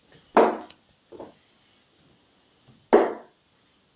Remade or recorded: recorded